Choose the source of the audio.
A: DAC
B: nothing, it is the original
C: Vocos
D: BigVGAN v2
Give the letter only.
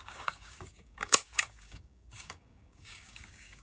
A